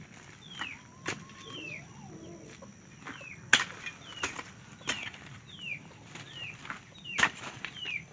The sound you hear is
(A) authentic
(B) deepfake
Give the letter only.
A